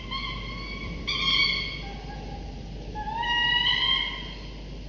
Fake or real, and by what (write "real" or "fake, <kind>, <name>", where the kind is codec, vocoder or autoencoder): real